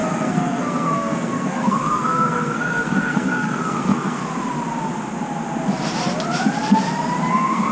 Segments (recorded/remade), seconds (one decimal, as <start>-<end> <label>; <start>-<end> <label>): 0.0-4.2 remade; 4.2-7.3 recorded; 7.3-7.7 remade